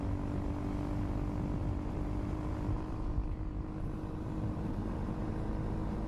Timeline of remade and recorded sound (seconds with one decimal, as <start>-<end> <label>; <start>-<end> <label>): 0.0-1.6 recorded; 1.6-5.3 remade; 5.3-6.1 recorded